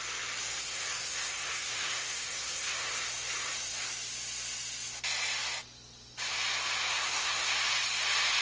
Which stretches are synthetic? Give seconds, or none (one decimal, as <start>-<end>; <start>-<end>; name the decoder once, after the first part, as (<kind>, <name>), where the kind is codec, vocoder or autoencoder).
0.5-2.9 (codec, SNAC); 6.9-7.5